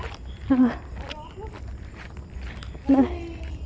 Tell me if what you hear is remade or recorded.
recorded